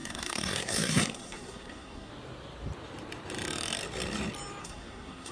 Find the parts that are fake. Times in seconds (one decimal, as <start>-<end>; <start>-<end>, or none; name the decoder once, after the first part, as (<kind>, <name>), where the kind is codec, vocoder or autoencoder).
0.0-2.1 (codec, SNAC); 4.6-5.3